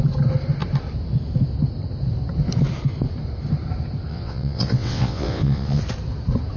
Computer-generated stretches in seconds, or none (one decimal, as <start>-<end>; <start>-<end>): 4.1-5.8